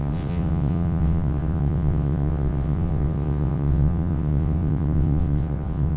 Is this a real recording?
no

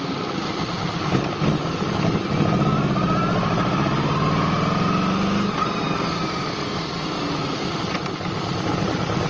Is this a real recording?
yes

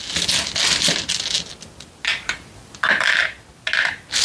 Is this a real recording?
yes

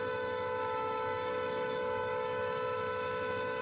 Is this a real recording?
no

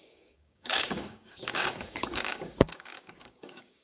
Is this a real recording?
no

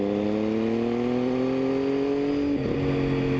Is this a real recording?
yes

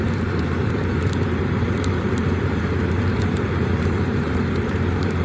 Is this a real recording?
no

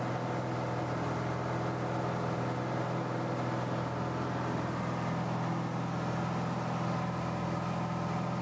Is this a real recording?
yes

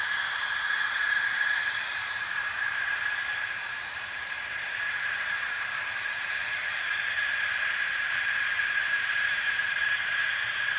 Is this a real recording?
no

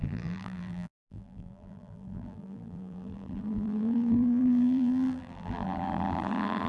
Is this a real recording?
no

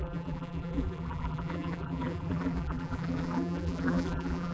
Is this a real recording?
no